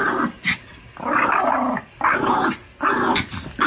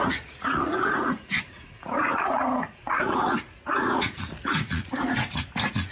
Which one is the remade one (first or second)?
second